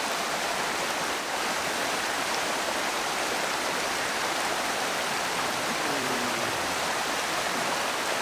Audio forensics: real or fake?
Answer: fake